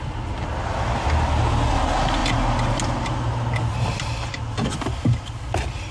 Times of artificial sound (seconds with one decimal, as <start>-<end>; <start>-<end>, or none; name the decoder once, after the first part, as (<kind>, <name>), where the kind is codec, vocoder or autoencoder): 3.7-5.4 (vocoder, BigVGAN v2)